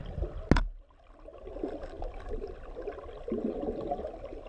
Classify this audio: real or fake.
real